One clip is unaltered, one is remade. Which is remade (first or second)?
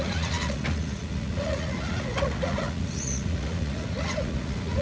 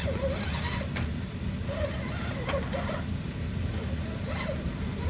first